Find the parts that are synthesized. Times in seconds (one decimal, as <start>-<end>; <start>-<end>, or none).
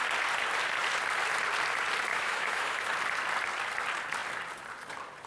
2.1-2.9